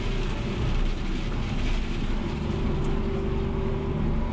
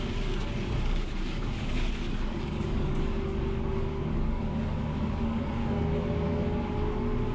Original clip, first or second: first